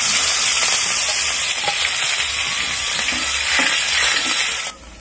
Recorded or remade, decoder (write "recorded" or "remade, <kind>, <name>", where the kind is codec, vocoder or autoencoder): recorded